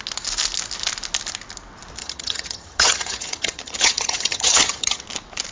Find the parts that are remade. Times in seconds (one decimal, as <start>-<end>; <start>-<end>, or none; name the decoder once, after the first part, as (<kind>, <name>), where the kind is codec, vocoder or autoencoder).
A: 2.0-5.0 (vocoder, HiFi-GAN)